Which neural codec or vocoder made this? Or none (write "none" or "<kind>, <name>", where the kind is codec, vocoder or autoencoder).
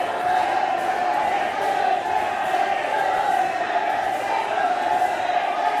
none